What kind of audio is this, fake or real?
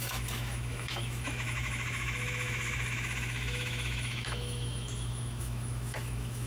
fake